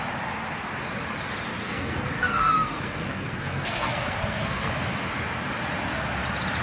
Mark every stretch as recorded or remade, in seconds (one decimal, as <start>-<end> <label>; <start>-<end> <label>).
0.0-1.6 recorded; 1.6-4.7 remade; 4.7-6.6 recorded